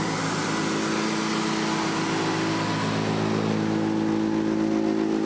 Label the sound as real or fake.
real